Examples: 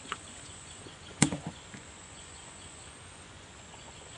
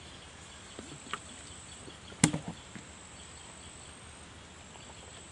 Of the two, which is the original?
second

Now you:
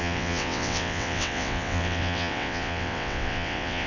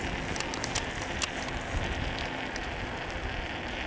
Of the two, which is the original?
second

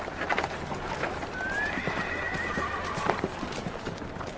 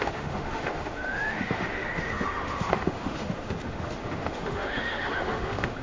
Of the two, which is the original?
first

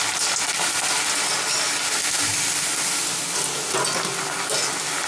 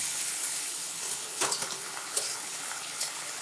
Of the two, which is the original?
first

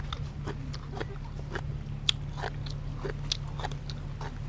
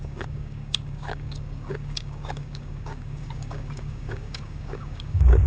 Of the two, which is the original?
first